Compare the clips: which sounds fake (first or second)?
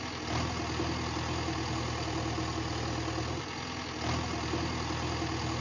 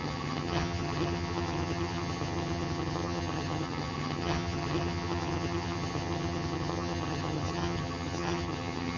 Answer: second